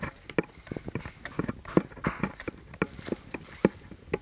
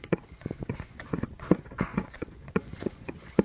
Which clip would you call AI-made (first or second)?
second